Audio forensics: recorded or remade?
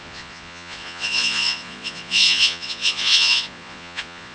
remade